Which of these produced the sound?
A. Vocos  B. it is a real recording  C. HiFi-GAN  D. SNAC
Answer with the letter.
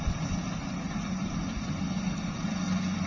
B